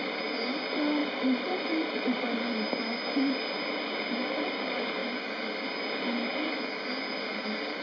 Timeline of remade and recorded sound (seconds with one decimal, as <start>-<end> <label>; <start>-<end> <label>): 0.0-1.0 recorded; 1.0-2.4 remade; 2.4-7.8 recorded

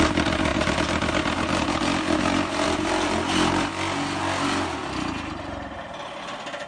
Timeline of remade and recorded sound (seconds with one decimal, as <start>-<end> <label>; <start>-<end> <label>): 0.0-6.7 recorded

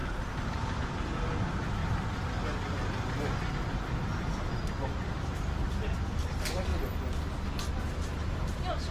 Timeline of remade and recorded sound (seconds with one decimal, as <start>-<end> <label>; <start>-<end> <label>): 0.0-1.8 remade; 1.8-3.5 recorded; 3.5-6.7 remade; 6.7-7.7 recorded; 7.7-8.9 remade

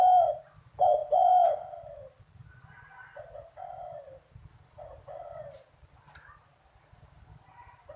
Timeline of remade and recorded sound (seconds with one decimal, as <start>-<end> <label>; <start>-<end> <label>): 0.0-1.0 recorded; 1.0-1.5 remade; 1.5-8.0 recorded

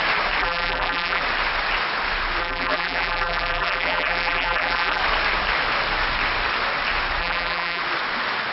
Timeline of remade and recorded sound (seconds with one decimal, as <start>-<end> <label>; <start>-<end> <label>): 0.0-0.4 recorded; 0.4-1.2 remade; 1.2-2.4 recorded; 2.4-5.0 remade; 5.0-7.2 recorded; 7.2-7.8 remade; 7.8-8.5 recorded